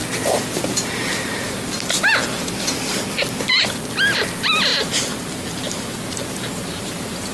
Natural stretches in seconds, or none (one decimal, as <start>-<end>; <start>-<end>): 0.0-7.3